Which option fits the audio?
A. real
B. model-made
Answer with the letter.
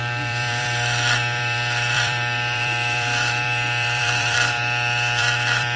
B